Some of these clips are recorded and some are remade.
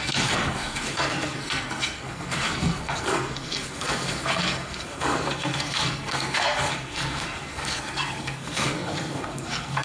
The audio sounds remade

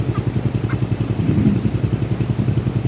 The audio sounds recorded